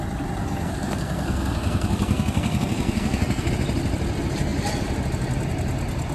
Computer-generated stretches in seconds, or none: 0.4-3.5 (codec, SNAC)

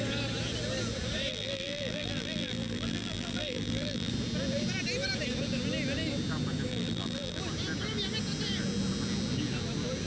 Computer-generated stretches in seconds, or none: 1.3-4.1 (vocoder, BigVGAN v2); 6.7-7.4